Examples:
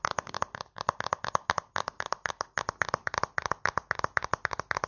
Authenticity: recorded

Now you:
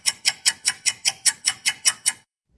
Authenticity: remade